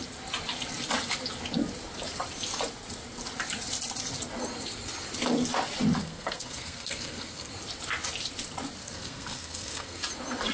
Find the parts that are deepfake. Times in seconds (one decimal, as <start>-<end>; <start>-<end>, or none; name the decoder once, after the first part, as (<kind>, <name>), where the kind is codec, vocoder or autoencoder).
6.0-7.5 (codec, SNAC); 8.8-10.0